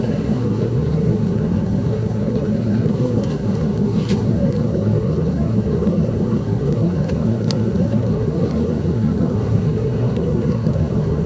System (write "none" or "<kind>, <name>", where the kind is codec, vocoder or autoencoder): codec, SNAC